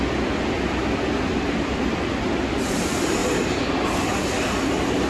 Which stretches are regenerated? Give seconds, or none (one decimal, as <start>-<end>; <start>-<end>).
none